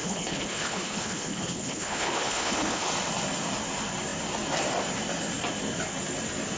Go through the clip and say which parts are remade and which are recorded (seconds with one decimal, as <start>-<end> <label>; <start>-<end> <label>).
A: 0.0-2.9 remade; 2.9-6.6 recorded